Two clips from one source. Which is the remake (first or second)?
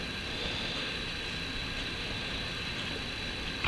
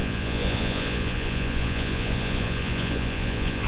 second